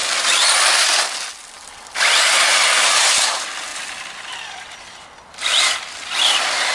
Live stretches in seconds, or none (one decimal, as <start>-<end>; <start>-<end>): 0.0-6.7

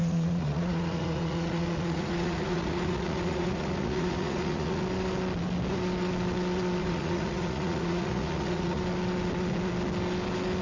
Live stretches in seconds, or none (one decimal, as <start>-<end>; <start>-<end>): 4.8-6.8; 8.8-10.6

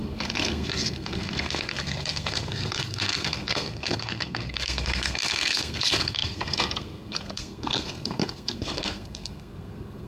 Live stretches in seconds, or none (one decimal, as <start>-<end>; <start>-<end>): none

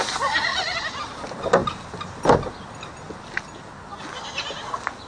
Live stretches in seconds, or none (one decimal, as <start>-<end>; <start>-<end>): 0.0-0.5; 1.0-5.1